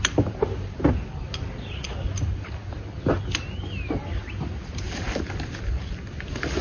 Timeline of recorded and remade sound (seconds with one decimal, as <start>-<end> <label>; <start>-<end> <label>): 0.0-6.6 recorded